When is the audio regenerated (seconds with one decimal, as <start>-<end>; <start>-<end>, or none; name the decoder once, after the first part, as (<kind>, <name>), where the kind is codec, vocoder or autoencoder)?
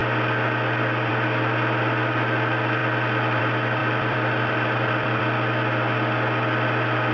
3.8-5.2 (vocoder, BigVGAN v2)